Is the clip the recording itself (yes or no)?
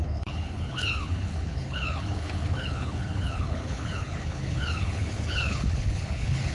no